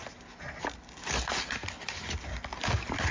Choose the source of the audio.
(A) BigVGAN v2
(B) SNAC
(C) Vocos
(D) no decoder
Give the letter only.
D